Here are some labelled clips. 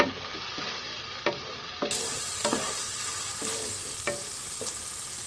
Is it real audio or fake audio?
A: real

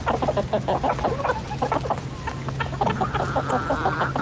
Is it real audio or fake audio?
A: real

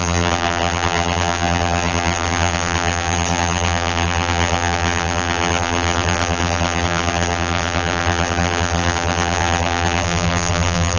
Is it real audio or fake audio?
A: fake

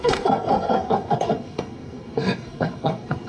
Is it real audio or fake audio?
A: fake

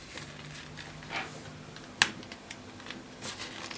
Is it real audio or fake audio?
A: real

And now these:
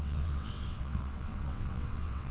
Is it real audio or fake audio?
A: fake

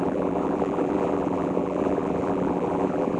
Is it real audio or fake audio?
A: fake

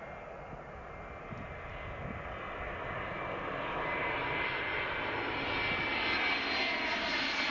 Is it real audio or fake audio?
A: real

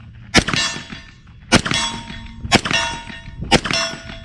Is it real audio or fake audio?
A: real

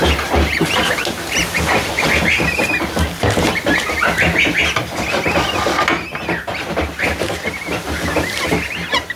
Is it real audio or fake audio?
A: real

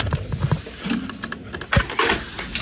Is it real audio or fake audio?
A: real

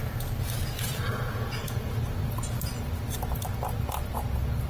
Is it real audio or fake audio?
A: real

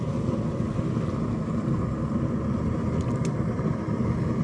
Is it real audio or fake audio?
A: real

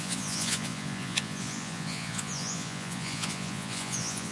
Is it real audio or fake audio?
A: fake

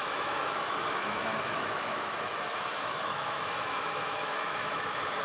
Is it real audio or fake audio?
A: fake